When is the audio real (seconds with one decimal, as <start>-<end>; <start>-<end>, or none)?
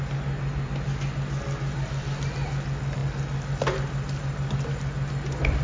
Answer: 0.0-5.6